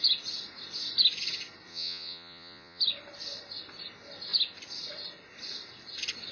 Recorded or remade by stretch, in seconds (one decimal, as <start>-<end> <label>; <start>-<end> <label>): 0.0-1.7 recorded; 1.7-2.8 remade; 2.8-6.3 recorded